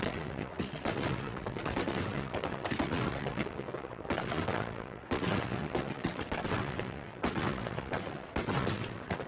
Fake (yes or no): yes